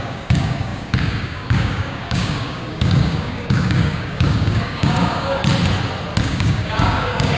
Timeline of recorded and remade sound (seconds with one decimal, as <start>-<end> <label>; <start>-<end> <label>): 0.0-5.4 remade; 5.4-6.2 recorded; 6.2-7.4 remade